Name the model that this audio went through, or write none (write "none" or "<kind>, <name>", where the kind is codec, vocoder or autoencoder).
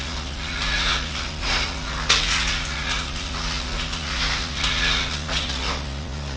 vocoder, Vocos